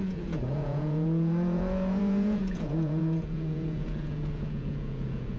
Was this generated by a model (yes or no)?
yes